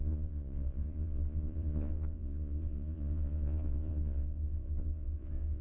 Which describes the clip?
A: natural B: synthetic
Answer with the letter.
B